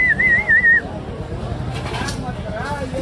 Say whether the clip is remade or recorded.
recorded